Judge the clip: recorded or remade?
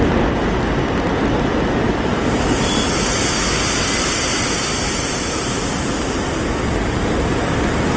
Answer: recorded